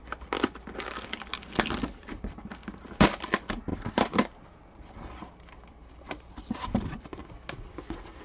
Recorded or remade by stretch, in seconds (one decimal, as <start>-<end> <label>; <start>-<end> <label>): 0.0-3.7 recorded; 3.7-5.3 remade; 5.3-5.7 recorded; 5.7-6.4 remade; 6.4-8.2 recorded